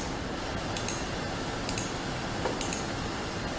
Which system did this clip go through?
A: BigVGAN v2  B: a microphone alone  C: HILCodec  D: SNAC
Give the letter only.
B